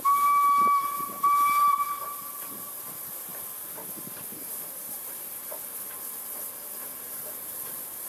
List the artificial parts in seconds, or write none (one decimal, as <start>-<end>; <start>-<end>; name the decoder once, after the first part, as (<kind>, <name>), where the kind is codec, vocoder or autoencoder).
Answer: 4.8-5.3 (vocoder, BigVGAN v2); 6.9-8.1